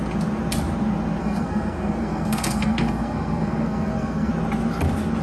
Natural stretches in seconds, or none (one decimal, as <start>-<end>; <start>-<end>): 0.0-1.2; 4.3-5.2

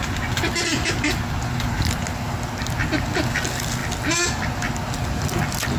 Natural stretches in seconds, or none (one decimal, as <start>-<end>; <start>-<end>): 0.0-5.8

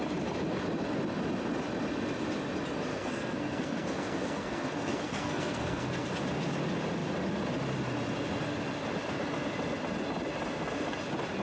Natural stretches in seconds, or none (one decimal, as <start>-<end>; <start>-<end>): 0.0-2.9; 6.1-11.4

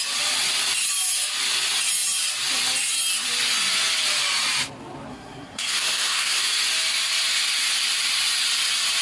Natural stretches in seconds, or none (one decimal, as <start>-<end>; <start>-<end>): 0.0-5.1; 6.4-9.0

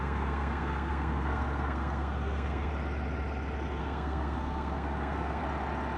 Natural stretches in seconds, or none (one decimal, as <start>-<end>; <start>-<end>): 2.7-3.8; 5.4-6.0

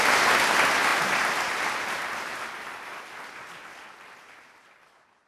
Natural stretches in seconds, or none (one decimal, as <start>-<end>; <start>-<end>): 0.0-5.3

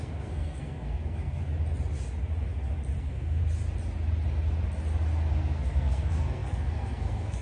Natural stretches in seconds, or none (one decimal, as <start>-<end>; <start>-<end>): 1.4-3.0; 3.4-5.3